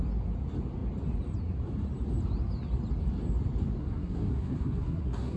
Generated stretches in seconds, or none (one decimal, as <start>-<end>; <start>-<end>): 3.8-5.4